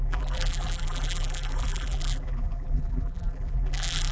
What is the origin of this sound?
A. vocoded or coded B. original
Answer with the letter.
A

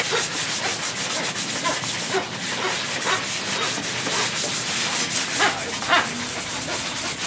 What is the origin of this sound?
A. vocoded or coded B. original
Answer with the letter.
B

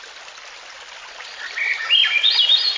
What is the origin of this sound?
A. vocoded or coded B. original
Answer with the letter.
B